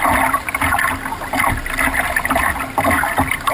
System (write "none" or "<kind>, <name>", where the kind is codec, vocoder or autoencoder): none